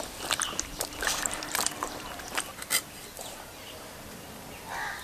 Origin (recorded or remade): remade